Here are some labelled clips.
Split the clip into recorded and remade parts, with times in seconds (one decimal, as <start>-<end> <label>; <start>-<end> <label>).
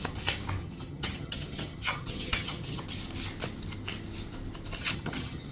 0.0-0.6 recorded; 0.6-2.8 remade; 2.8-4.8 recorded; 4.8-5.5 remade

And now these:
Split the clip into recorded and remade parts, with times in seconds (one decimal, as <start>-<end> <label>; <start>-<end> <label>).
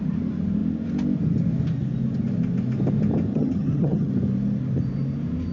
0.0-3.3 recorded; 3.3-4.1 remade; 4.1-5.5 recorded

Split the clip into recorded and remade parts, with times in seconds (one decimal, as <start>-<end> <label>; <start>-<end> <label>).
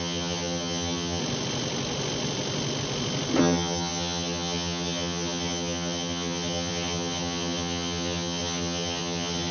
0.0-1.2 remade; 1.2-3.4 recorded; 3.4-9.5 remade